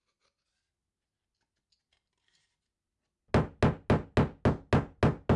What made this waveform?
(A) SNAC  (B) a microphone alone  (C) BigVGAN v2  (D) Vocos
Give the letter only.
B